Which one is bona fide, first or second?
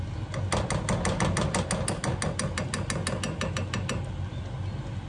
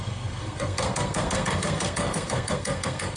first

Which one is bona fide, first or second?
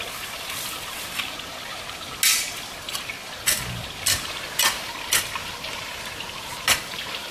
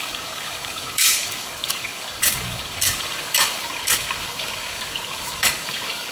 first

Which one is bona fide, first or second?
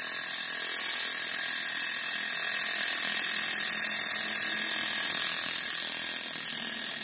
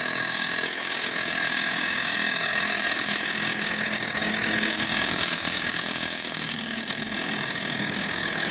first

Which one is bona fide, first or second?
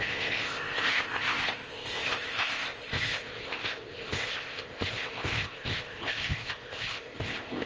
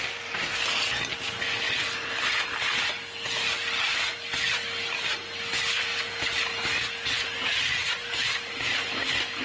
second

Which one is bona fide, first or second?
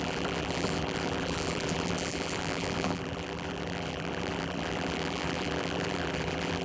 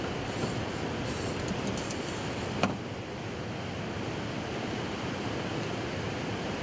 second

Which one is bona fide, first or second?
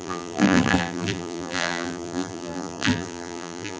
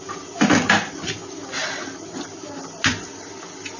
second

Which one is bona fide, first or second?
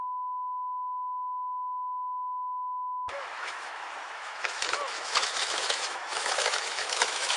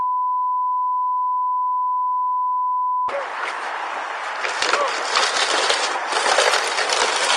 second